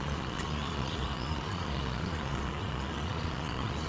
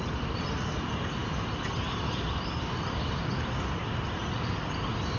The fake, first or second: first